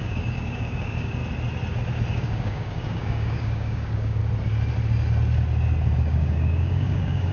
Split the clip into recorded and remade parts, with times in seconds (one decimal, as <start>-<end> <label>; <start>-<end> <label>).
0.0-1.2 remade; 1.2-2.1 recorded; 2.1-4.2 remade; 4.2-6.0 recorded; 6.0-7.3 remade